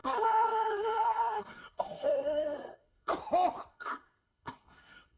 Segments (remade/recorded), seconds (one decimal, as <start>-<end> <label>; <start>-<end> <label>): 0.0-3.1 remade; 3.1-3.7 recorded; 3.7-5.2 remade